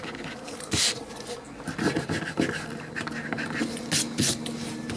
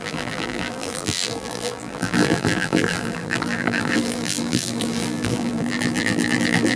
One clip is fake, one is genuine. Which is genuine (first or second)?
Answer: first